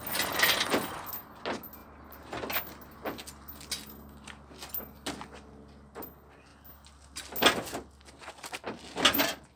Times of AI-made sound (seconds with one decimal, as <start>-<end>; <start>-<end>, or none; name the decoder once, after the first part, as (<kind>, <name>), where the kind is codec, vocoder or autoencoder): none